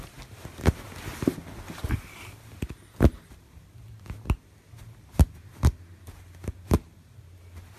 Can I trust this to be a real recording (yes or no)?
yes